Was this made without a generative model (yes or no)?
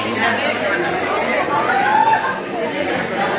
no